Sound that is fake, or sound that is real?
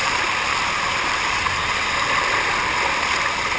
real